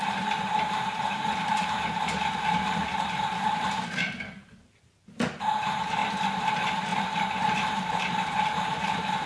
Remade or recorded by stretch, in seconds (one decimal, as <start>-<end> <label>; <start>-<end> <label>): 0.0-6.0 remade; 6.0-6.5 recorded; 6.5-9.3 remade